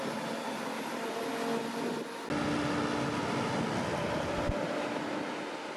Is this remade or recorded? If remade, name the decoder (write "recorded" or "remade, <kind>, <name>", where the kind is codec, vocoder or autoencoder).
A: recorded